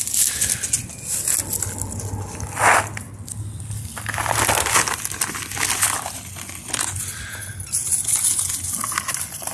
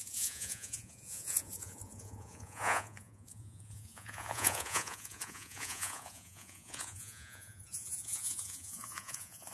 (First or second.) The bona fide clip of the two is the first